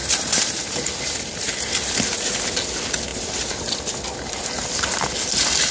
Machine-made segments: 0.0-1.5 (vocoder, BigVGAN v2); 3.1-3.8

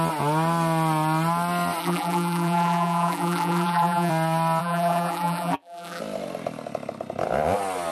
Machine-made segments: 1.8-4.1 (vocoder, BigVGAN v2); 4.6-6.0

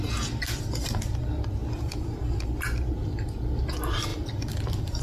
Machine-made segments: 4.1-5.0 (vocoder, BigVGAN v2)